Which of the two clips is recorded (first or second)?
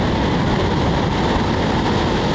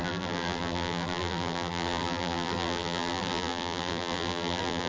first